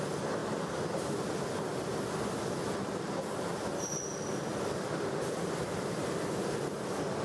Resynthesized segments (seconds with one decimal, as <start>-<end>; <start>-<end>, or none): 0.4-1.0; 1.7-6.0